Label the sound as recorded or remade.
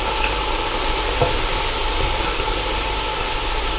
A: recorded